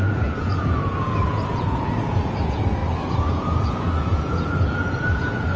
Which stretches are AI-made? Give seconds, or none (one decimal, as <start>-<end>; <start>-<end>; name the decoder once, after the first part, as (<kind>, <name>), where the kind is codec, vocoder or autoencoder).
0.0-2.8 (vocoder, Vocos); 3.3-5.6